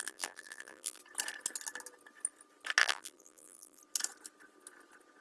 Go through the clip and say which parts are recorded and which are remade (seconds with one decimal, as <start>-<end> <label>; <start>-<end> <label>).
0.0-1.0 remade; 1.0-2.8 recorded; 2.8-3.8 remade; 3.8-5.2 recorded